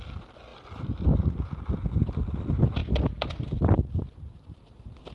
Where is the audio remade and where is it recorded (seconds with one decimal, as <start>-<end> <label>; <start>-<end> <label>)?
0.0-0.5 recorded; 0.5-1.6 remade; 1.6-5.1 recorded